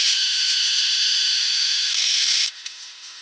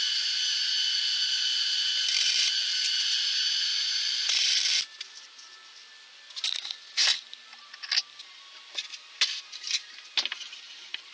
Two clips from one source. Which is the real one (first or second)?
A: second